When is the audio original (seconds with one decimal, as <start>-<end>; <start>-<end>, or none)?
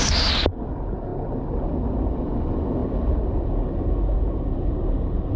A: 0.0-5.4